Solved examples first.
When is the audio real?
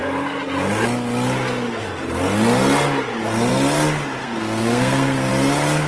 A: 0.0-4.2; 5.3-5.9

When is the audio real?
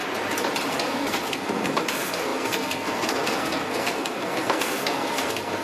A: 0.0-0.7